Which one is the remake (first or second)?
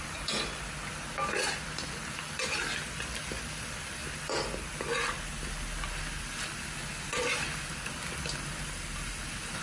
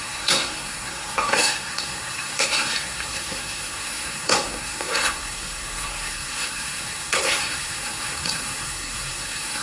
second